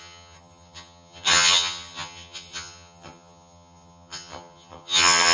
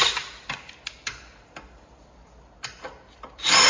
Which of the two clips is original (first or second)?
second